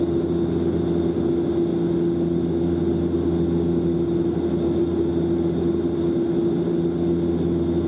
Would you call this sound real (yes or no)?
yes